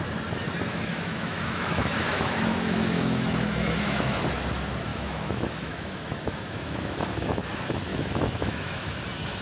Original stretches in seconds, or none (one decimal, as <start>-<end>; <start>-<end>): 0.0-0.7; 4.2-4.9; 7.4-7.9; 8.9-9.4